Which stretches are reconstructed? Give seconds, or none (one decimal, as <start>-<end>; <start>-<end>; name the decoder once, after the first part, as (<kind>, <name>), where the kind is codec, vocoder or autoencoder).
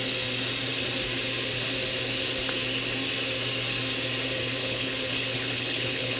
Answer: 4.6-6.2 (codec, HILCodec)